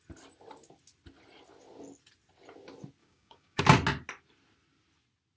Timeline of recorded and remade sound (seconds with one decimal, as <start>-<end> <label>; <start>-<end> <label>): 0.0-3.0 recorded; 3.0-3.6 remade; 3.6-5.4 recorded